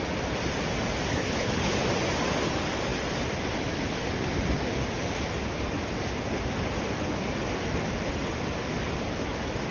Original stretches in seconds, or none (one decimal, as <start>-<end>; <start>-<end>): 0.0-1.1; 1.7-9.7